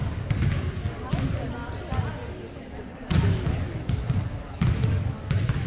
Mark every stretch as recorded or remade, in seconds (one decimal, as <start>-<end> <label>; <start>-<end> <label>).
0.0-1.1 remade; 1.1-2.2 recorded; 2.2-5.3 remade; 5.3-5.7 recorded